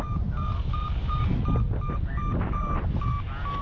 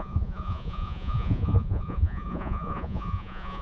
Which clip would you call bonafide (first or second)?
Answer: first